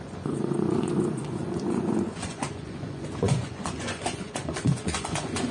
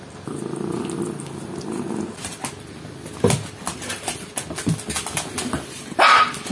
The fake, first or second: first